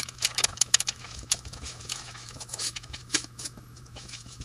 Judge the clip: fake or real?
fake